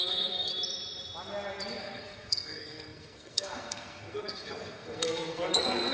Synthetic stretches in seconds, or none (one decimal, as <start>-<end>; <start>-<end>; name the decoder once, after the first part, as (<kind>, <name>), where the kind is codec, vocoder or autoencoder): 0.0-0.5 (codec, SNAC); 1.8-5.9